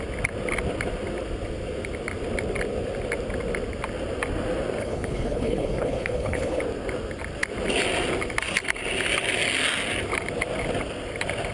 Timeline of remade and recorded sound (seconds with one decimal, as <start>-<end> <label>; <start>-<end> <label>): 0.0-4.8 recorded; 4.8-6.6 remade; 6.6-11.5 recorded